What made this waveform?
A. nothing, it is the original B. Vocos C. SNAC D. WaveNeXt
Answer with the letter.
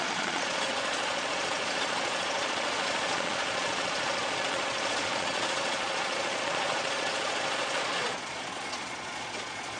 B